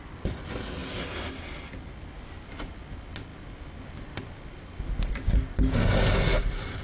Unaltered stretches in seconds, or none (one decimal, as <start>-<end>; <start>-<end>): 0.0-6.8